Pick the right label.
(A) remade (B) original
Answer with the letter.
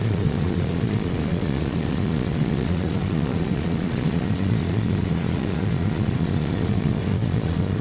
A